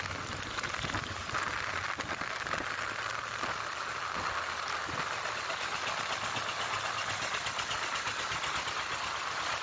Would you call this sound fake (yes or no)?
no